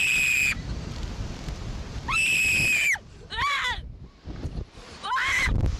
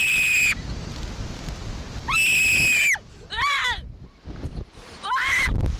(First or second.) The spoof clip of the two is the first